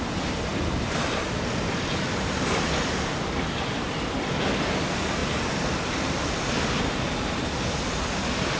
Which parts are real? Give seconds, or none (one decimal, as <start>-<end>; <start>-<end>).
0.0-0.5; 2.3-5.2; 6.8-8.6